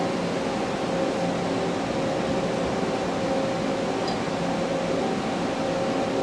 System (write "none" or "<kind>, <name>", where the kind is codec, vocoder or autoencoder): none